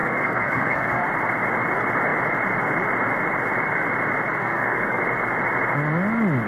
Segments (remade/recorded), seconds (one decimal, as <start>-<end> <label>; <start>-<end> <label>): 0.0-1.0 remade; 1.0-4.4 recorded; 4.4-5.0 remade; 5.0-6.5 recorded